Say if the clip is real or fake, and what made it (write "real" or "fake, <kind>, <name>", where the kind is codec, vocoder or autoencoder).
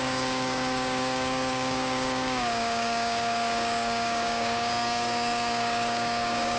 fake, codec, DAC